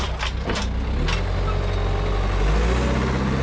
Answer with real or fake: real